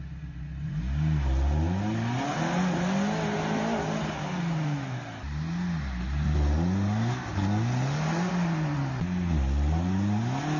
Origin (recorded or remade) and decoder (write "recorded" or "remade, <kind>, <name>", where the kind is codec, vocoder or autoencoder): recorded